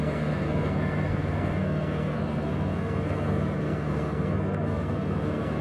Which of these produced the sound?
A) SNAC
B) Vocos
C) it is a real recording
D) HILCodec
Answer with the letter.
A